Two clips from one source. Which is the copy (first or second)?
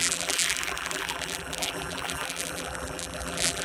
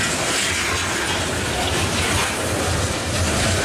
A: first